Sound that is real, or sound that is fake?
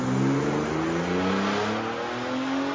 real